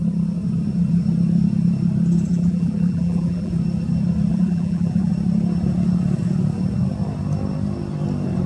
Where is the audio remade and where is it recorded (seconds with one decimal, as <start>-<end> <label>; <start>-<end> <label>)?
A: 0.0-2.3 recorded; 2.3-3.5 remade; 3.5-4.3 recorded; 4.3-5.1 remade; 5.1-8.5 recorded